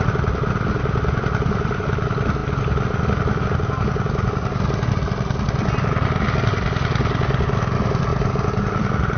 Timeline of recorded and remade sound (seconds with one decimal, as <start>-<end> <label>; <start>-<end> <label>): 0.0-9.2 recorded